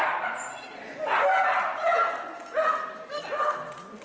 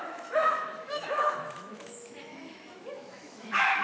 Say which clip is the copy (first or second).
second